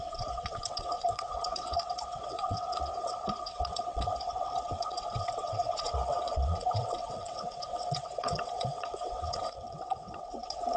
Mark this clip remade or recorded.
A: remade